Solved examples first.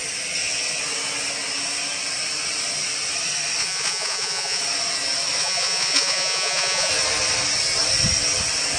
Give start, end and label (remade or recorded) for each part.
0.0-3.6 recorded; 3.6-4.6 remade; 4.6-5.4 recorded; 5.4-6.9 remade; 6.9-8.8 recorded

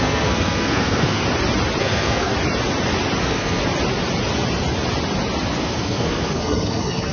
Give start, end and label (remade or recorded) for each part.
0.0-1.2 remade; 1.2-1.8 recorded; 1.8-2.3 remade; 2.3-3.2 recorded; 3.2-3.6 remade; 3.6-5.6 recorded; 5.6-7.1 remade

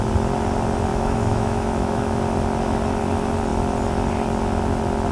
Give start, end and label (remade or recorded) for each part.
0.0-0.9 recorded; 0.9-2.2 remade; 2.2-5.1 recorded

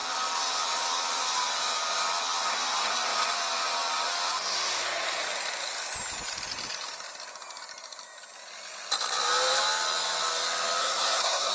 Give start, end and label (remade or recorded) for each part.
0.0-10.8 recorded; 10.8-11.5 remade